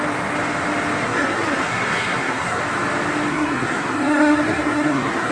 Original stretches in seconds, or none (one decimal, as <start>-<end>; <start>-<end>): 0.0-1.0; 2.6-3.3